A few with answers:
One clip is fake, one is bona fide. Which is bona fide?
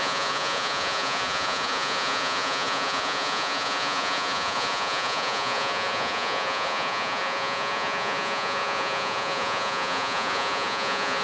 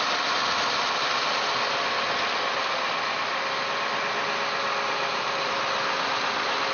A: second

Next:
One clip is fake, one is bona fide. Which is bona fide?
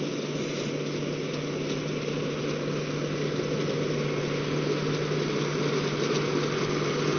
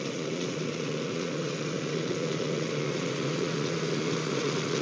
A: first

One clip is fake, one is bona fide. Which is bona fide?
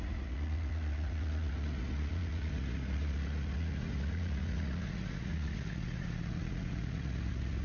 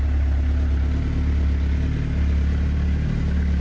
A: second